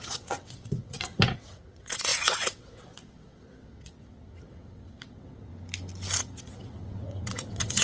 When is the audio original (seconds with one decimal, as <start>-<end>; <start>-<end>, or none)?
5.5-6.2